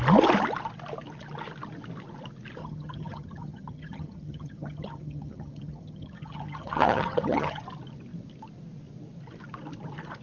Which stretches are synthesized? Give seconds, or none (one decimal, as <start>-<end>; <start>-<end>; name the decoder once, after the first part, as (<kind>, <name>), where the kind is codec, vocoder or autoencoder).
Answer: 2.6-7.6 (vocoder, HiFi-GAN)